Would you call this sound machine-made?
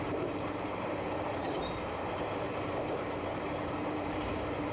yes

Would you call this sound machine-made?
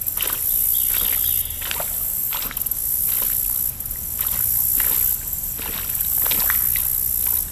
no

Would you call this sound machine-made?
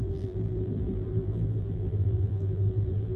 yes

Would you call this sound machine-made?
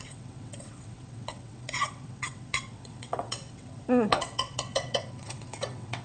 yes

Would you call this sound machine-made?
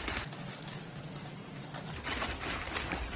no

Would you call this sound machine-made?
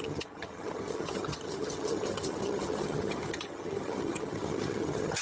yes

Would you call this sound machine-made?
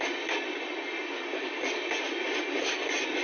no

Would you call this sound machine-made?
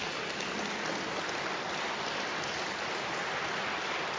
no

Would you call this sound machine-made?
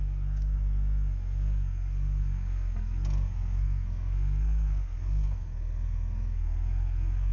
yes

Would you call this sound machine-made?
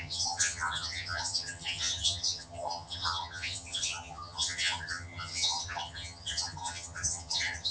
yes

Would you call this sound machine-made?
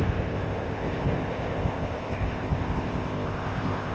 yes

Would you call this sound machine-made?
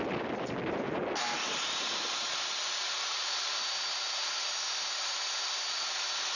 no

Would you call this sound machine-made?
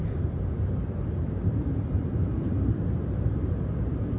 yes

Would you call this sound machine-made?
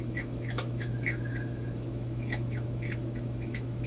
yes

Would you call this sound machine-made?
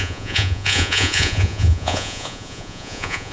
yes